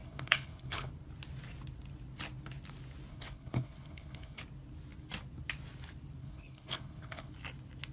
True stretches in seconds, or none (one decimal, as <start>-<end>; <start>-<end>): 0.9-3.1; 4.4-6.2; 7.3-7.9